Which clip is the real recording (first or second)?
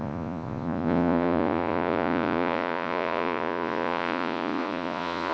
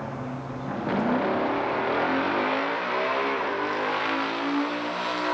second